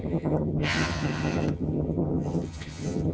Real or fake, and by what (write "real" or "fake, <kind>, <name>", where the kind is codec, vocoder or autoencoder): fake, vocoder, HiFi-GAN